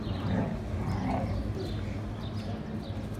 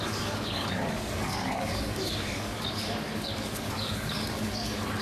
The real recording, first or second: first